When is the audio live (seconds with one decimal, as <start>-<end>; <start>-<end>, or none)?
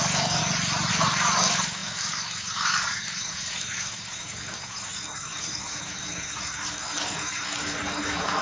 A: 0.4-0.9